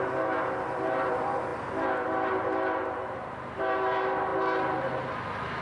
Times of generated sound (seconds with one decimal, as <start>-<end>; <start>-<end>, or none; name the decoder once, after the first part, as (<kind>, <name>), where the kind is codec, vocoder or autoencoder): none